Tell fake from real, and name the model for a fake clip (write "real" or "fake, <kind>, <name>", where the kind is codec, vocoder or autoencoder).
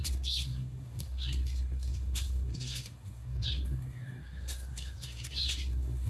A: fake, codec, SNAC